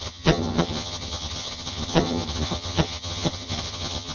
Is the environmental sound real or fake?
fake